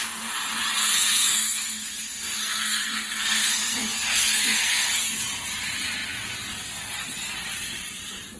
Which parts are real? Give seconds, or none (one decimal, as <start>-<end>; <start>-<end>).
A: 0.0-0.8; 5.1-8.4